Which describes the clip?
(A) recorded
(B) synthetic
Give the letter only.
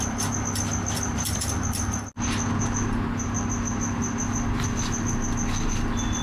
A